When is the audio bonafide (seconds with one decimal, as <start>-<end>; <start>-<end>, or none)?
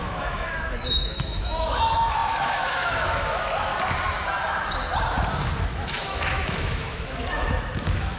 3.7-5.6